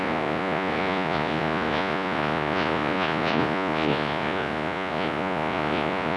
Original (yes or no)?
no